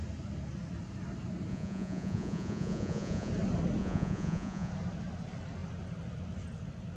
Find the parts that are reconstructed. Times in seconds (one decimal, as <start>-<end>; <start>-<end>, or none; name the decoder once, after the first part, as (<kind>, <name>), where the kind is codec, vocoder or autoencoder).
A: 1.5-3.3 (vocoder, Vocos); 3.8-4.7